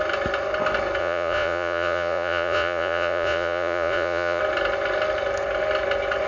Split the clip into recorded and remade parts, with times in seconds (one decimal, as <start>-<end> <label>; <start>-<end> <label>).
0.0-1.0 recorded; 1.0-4.4 remade; 4.4-6.3 recorded